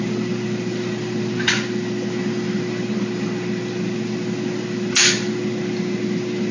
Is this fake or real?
real